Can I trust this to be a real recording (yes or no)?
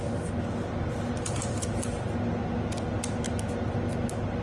yes